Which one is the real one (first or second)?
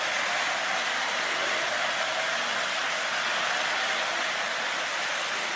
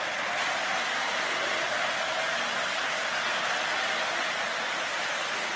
second